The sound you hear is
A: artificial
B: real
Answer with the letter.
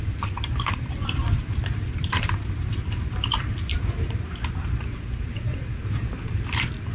A